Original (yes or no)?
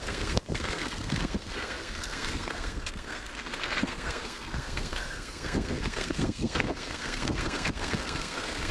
no